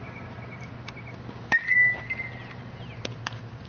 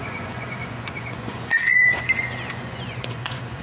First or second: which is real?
first